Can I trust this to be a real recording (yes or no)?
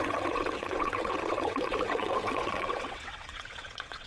no